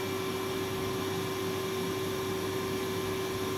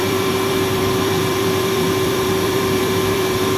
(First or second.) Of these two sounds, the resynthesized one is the second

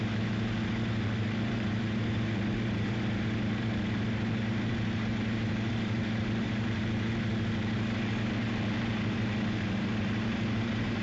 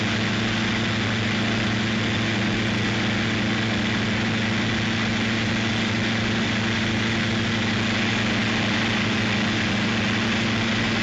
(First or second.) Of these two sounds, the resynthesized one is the first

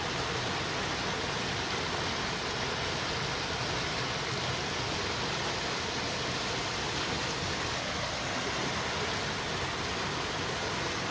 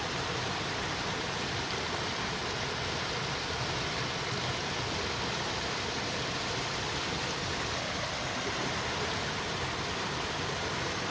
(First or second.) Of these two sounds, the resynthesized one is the second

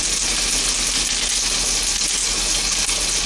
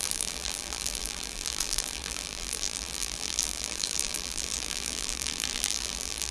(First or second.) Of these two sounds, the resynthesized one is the second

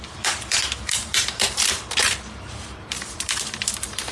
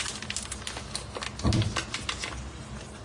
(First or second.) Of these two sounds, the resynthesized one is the first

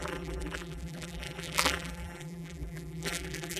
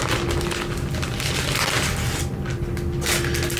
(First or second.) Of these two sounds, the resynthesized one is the first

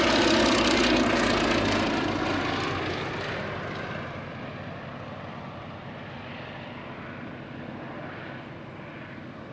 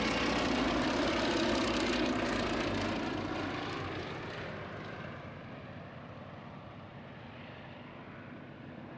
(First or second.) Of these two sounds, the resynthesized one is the second